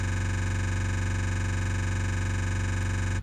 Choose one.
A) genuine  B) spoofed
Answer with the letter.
A